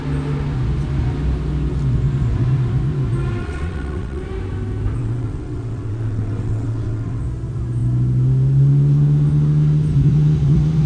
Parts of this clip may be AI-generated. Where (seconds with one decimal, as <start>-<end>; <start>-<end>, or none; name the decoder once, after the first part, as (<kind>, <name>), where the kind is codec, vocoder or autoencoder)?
3.4-4.2 (vocoder, WaveNeXt); 5.0-7.2